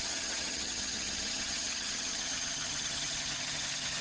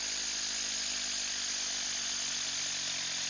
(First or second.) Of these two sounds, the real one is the second